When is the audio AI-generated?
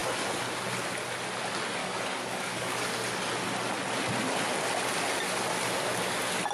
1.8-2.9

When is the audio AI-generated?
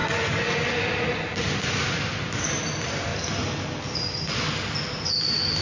none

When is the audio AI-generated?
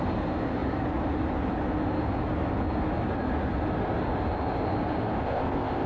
5.2-5.9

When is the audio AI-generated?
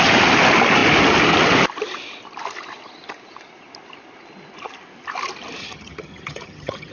5.6-6.9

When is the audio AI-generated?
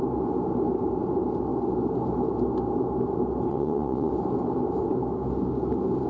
3.5-4.1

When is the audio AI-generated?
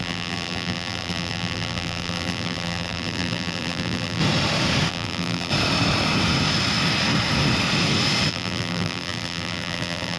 0.0-4.2; 4.9-5.5; 8.3-10.2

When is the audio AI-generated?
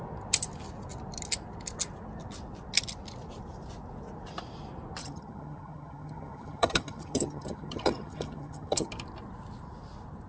5.0-8.9